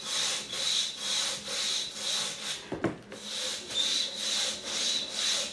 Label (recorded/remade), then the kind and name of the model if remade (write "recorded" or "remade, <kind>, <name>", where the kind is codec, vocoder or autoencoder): recorded